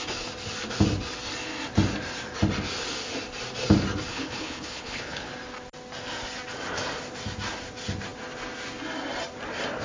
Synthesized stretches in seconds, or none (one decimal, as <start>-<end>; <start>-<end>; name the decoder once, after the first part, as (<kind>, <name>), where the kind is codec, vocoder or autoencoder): 4.1-5.3 (codec, HILCodec)